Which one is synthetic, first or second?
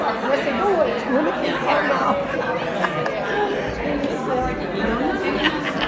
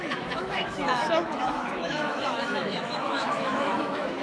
second